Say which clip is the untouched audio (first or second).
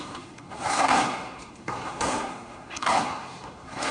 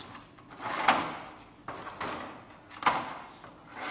second